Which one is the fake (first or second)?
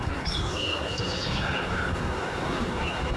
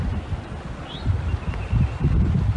first